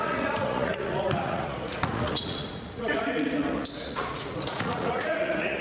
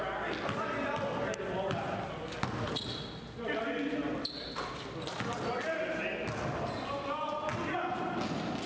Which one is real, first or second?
second